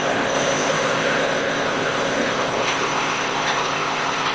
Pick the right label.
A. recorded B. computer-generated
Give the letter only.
B